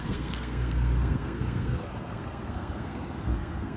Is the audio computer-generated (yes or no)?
yes